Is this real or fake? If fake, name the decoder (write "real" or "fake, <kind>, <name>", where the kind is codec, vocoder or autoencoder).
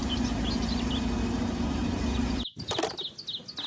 real